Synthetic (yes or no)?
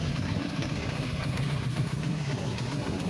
yes